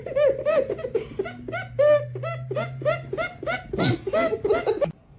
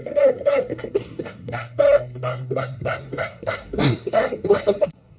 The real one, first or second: first